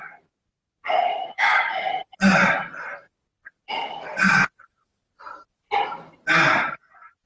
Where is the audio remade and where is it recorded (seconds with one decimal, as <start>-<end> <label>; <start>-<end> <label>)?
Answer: 0.0-7.3 recorded